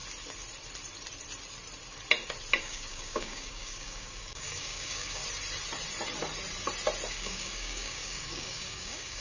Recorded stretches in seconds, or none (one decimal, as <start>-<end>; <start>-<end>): 0.0-2.6; 5.2-7.1